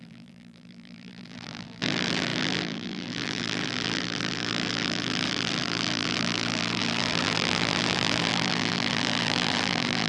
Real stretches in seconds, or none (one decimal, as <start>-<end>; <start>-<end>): none